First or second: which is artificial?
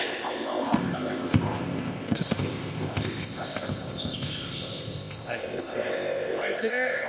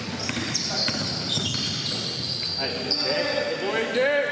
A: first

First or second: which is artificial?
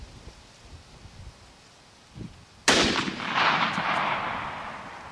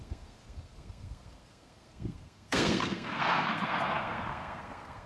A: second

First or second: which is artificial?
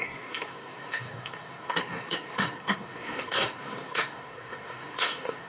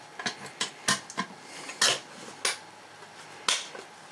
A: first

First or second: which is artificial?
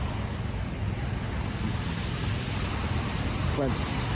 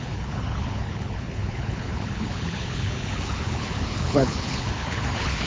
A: second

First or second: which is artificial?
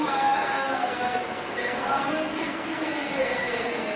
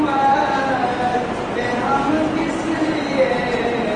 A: first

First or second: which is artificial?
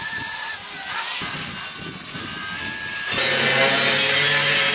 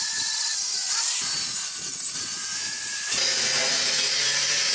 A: second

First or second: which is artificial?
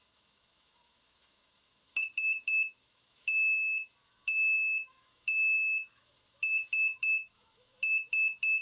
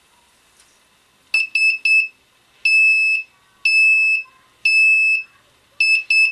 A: first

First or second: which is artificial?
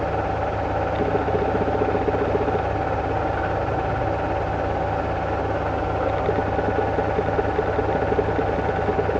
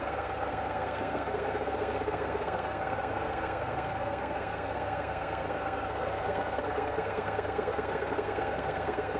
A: second